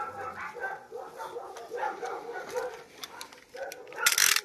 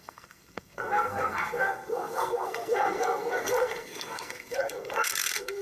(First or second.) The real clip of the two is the first